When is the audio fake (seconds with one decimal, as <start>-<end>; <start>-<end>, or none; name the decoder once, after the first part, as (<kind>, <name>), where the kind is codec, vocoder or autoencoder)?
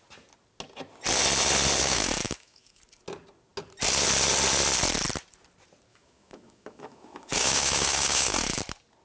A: 1.8-2.8 (autoencoder, DAC-VAE); 5.9-8.6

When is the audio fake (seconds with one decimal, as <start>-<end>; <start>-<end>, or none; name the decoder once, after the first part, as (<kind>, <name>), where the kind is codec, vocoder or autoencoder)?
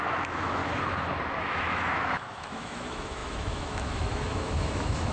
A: 0.0-0.6 (autoencoder, DAC-VAE); 1.4-5.1